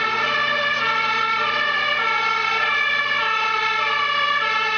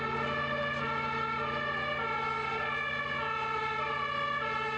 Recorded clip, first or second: second